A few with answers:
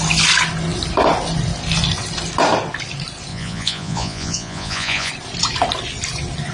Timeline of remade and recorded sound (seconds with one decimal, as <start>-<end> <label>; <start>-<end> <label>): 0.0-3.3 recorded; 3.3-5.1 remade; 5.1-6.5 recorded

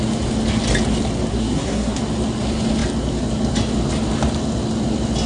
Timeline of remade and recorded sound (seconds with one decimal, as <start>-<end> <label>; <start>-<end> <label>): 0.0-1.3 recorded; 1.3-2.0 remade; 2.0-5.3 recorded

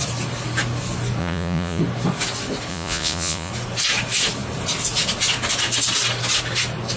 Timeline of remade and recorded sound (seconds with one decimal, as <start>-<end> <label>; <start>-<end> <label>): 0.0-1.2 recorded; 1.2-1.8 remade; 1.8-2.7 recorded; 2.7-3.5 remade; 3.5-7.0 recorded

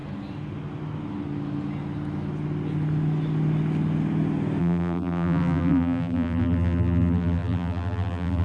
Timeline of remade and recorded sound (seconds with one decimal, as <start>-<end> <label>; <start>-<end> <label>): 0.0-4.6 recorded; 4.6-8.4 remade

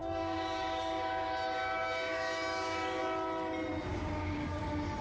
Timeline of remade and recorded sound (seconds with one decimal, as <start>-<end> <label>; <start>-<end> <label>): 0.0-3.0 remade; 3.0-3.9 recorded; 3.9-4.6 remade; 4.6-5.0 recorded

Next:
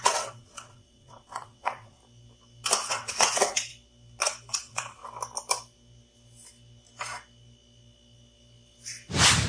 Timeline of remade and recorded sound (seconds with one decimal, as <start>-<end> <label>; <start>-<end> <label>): 0.0-2.0 remade; 2.0-2.9 recorded; 2.9-3.7 remade; 3.7-4.5 recorded; 4.5-5.0 remade; 5.0-9.5 recorded